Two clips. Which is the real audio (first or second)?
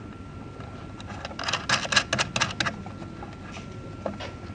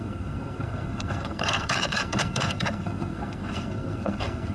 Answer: first